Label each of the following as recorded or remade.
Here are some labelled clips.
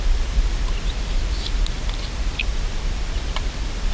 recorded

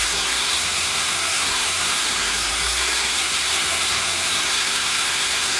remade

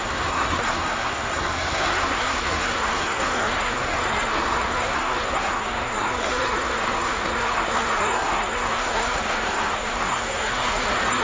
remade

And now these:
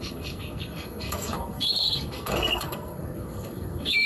remade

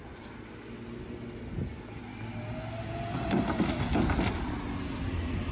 recorded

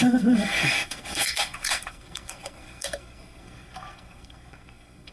remade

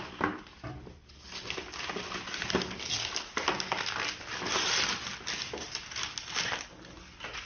recorded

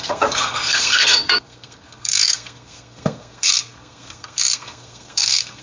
remade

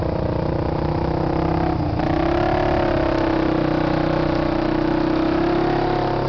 recorded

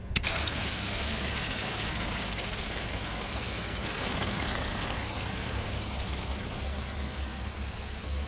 remade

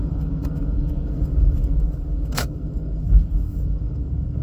remade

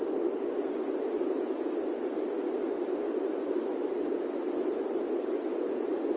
recorded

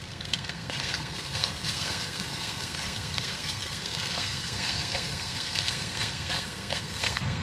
remade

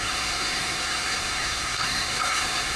remade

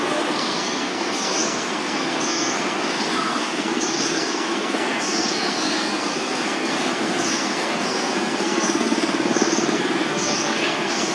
remade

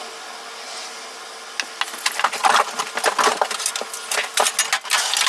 recorded